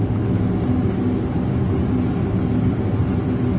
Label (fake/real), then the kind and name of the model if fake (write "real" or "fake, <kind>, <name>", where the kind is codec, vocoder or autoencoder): real